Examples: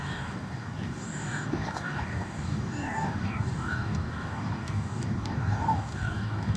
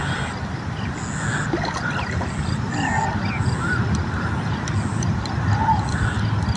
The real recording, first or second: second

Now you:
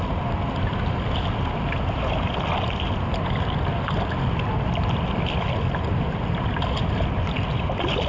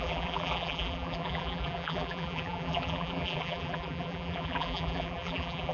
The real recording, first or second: first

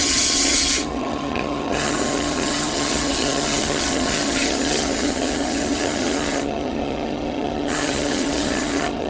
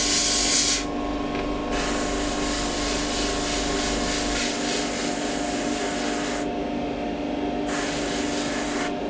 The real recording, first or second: second